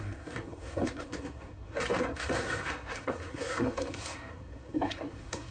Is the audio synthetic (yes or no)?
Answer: yes